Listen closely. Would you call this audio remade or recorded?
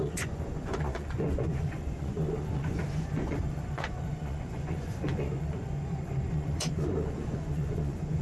remade